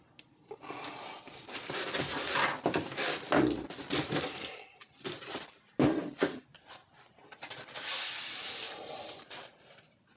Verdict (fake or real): real